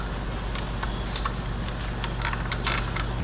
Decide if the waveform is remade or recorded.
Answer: recorded